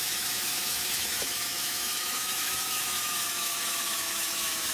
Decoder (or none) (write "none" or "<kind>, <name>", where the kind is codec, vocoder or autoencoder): autoencoder, DAC-VAE